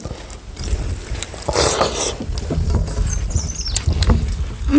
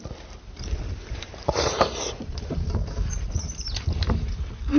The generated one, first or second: second